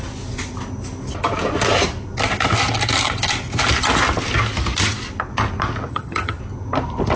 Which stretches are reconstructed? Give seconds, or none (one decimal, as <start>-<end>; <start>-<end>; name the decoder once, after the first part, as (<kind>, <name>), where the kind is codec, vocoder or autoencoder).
5.9-6.4 (vocoder, HiFi-GAN)